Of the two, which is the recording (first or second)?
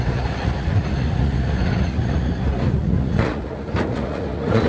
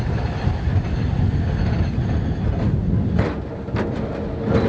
second